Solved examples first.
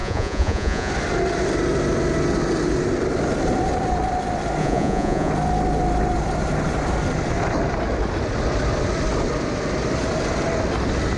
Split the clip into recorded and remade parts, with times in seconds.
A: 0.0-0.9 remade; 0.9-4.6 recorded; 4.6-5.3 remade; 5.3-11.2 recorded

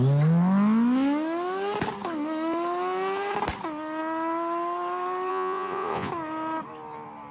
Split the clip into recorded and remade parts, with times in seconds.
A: 0.0-5.3 recorded; 5.3-6.1 remade; 6.1-7.3 recorded

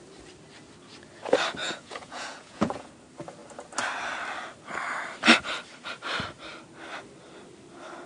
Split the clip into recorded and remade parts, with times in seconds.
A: 0.0-1.6 recorded; 1.6-2.9 remade; 2.9-8.1 recorded

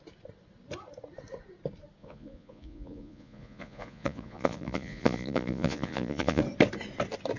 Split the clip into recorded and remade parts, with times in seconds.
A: 0.0-2.0 recorded; 2.0-6.4 remade; 6.4-7.4 recorded

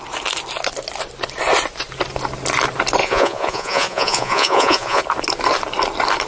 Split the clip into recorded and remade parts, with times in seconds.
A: 0.0-3.0 recorded; 3.0-5.0 remade; 5.0-6.3 recorded

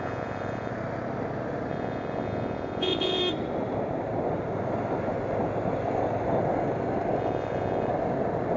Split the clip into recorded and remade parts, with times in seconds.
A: 0.0-0.7 remade; 0.7-1.7 recorded; 1.7-3.2 remade; 3.2-7.2 recorded; 7.2-7.9 remade; 7.9-8.6 recorded